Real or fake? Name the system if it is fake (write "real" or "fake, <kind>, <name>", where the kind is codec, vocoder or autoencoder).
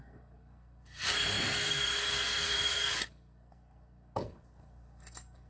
fake, codec, SNAC